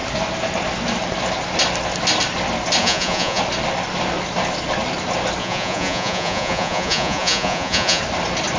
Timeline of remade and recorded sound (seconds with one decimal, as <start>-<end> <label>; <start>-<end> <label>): 0.0-2.8 recorded; 2.8-3.4 remade; 3.4-5.4 recorded; 5.4-8.0 remade; 8.0-8.6 recorded